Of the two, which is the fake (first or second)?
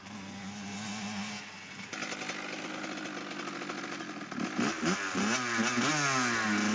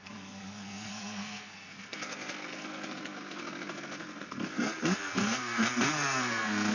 second